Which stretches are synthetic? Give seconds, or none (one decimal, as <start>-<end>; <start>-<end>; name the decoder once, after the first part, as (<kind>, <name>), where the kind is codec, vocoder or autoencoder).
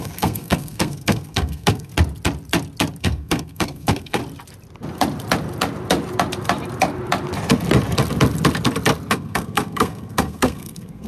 0.0-1.9 (codec, SNAC); 3.0-4.2; 9.1-11.1